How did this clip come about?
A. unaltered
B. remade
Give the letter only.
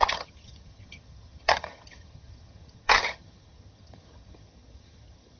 B